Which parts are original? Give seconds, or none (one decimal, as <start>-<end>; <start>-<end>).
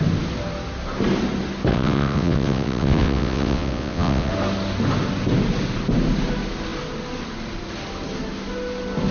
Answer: 0.0-1.7; 4.3-9.1